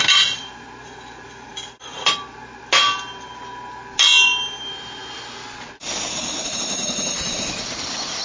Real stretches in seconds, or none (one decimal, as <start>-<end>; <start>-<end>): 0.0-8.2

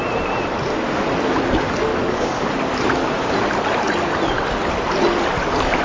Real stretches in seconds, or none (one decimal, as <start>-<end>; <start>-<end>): 0.0-1.9; 2.5-5.8

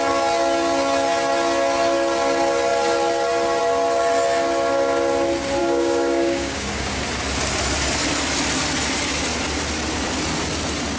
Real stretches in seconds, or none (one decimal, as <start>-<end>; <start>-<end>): 0.0-5.6; 7.0-11.0

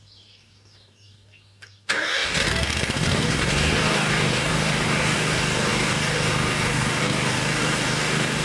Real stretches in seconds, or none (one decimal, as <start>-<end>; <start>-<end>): none